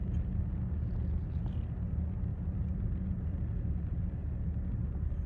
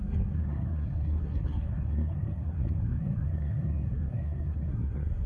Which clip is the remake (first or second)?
second